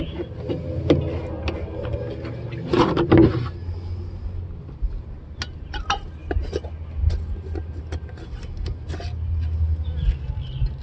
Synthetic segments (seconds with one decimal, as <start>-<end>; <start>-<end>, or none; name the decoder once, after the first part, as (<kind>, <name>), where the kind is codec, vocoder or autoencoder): none